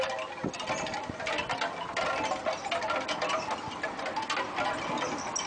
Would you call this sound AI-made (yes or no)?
no